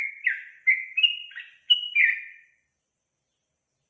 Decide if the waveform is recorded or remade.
recorded